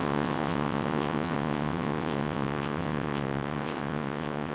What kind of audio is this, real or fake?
fake